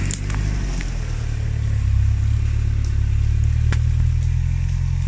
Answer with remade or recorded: recorded